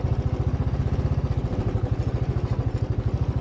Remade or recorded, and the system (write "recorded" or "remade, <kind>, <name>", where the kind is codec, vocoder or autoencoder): recorded